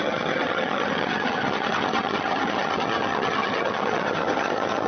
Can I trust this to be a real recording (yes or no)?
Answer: no